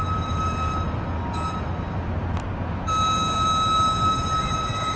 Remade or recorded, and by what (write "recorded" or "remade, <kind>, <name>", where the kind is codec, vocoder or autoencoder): recorded